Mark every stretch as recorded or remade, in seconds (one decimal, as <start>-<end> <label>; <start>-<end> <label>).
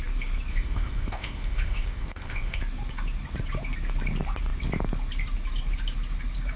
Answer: 0.0-0.5 recorded; 0.5-2.6 remade; 2.6-6.6 recorded